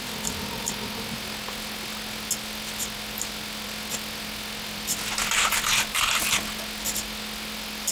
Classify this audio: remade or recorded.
recorded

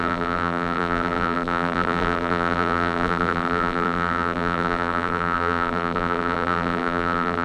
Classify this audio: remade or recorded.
remade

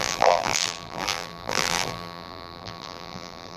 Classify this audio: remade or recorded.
remade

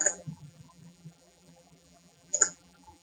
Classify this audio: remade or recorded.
remade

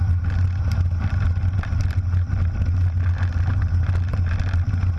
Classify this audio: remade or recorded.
recorded